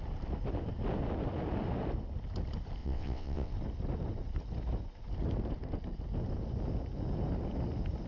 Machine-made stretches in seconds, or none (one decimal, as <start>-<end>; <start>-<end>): 2.8-3.5